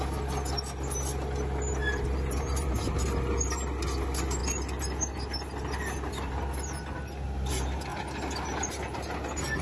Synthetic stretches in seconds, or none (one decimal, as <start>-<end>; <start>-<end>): 1.8-2.7